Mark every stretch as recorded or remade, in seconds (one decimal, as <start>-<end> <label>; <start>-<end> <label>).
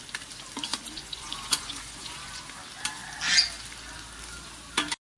0.0-0.7 recorded; 0.7-2.4 remade; 2.4-5.2 recorded